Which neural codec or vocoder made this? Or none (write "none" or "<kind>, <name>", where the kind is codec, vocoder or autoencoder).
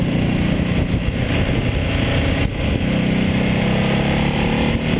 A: none